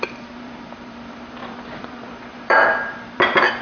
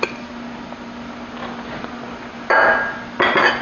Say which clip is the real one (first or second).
second